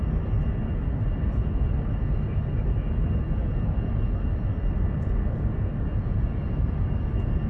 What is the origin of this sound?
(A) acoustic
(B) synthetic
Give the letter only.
A